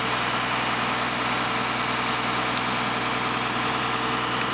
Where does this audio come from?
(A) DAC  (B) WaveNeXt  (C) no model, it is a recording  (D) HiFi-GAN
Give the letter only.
C